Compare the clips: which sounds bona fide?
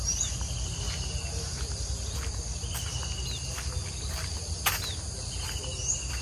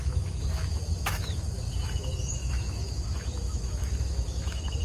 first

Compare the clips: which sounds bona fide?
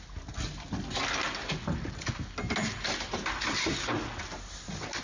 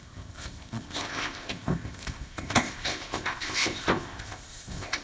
first